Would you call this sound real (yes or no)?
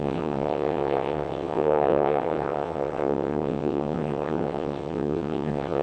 no